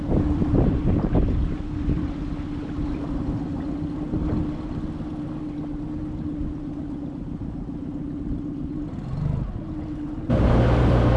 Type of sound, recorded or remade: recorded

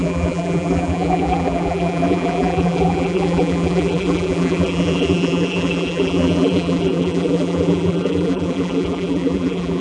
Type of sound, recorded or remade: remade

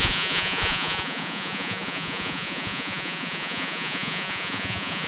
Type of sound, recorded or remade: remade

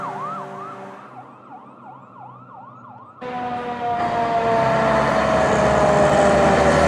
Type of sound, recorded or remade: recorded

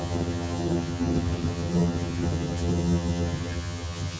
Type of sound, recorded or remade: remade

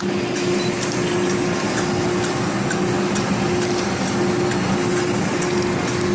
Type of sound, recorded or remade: recorded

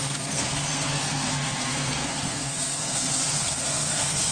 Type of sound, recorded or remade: remade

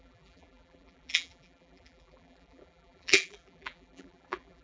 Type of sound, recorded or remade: remade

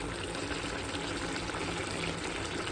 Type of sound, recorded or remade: recorded